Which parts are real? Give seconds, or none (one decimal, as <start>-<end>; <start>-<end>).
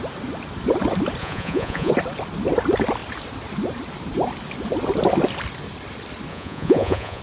0.0-1.2; 1.9-6.3